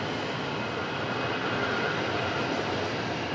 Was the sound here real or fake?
real